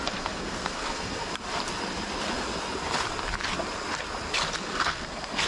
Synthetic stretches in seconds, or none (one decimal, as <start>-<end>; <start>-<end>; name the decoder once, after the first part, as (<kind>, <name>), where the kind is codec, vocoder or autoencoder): 0.0-1.3 (codec, SNAC); 4.6-5.5